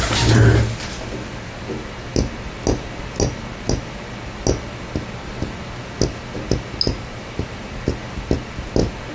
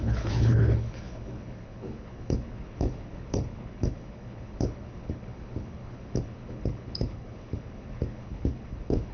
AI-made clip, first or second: second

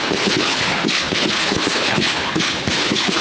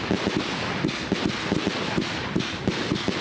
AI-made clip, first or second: first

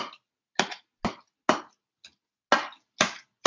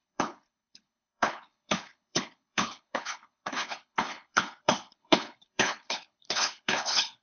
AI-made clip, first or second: second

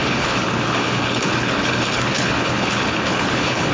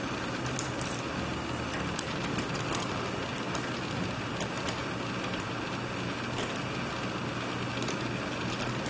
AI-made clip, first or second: first